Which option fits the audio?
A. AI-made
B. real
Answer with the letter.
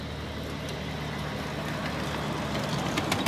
B